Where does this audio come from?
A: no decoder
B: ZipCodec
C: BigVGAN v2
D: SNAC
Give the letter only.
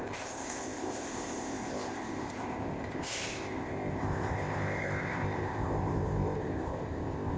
B